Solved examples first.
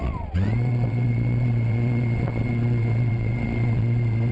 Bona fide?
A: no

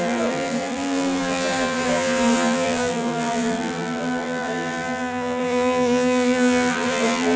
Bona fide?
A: no